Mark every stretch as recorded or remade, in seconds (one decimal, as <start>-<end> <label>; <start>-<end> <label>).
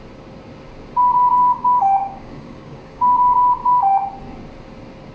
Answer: 0.0-1.4 recorded; 1.4-3.5 remade; 3.5-5.1 recorded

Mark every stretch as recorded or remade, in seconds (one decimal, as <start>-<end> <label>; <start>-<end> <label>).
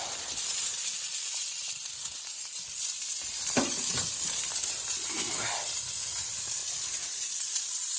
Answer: 0.0-8.0 recorded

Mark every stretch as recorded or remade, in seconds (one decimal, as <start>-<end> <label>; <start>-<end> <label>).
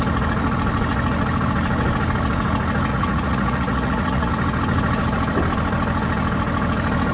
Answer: 0.0-2.9 recorded; 2.9-4.3 remade; 4.3-7.1 recorded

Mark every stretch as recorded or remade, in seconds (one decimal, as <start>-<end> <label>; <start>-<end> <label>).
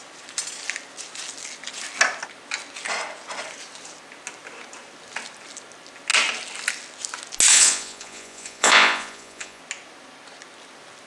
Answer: 0.0-7.5 recorded; 7.5-9.6 remade; 9.6-11.1 recorded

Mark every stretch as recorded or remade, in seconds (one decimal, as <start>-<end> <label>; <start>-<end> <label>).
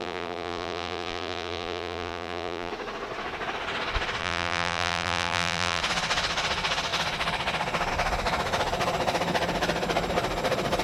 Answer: 0.0-2.7 remade; 2.7-4.2 recorded; 4.2-5.8 remade; 5.8-10.8 recorded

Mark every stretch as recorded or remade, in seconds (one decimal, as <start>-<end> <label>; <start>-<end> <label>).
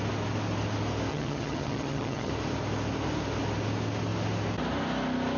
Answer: 0.0-1.1 recorded; 1.1-2.3 remade; 2.3-5.4 recorded